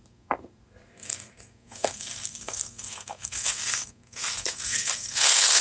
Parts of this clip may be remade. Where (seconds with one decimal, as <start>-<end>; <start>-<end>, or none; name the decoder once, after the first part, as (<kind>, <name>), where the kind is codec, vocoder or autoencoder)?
0.0-5.6 (codec, SNAC)